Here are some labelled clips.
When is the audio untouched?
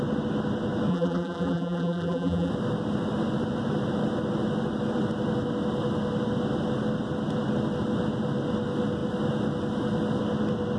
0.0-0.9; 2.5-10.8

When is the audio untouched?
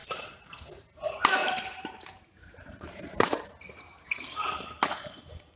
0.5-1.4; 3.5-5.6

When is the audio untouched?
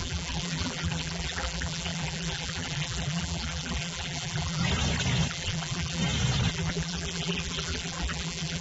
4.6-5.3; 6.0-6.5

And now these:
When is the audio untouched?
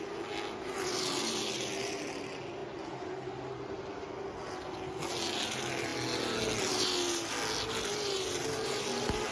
0.0-9.3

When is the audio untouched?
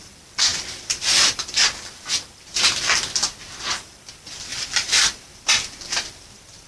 0.0-0.5; 1.1-4.5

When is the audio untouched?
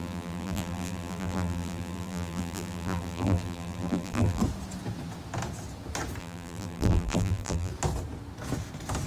4.4-6.2; 7.7-9.1